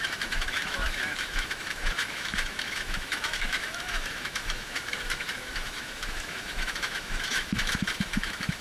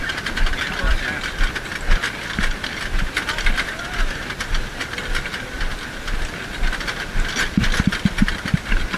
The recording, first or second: second